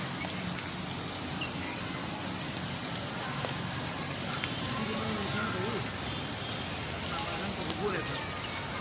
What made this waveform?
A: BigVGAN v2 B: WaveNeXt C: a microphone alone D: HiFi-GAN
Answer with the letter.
C